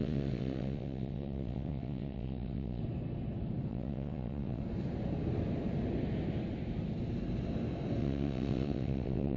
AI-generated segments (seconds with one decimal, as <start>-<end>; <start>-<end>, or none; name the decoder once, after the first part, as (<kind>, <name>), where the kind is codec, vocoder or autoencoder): 0.0-2.8 (vocoder, WaveNeXt); 3.7-4.6; 8.0-9.4